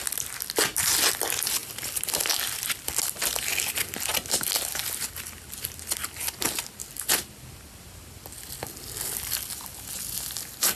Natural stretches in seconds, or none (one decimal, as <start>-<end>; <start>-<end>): 0.0-1.6; 2.3-10.8